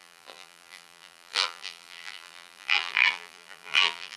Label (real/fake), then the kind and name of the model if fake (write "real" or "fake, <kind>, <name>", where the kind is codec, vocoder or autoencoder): fake, vocoder, BigVGAN v2